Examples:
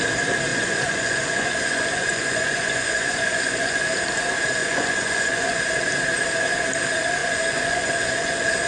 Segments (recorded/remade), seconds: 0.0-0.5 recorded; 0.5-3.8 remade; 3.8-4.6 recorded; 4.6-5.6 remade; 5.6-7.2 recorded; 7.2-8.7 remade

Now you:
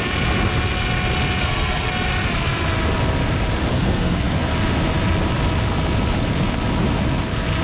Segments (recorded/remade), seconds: 0.0-1.4 recorded; 1.4-1.9 remade; 1.9-3.7 recorded; 3.7-4.4 remade; 4.4-7.6 recorded

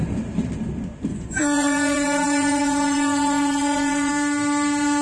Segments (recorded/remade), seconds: 0.0-1.1 recorded; 1.1-4.1 remade; 4.1-5.0 recorded